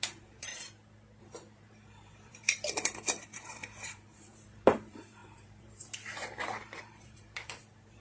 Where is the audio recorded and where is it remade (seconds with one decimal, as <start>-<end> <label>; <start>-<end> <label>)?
0.0-0.5 remade; 0.5-1.2 recorded; 1.2-8.0 remade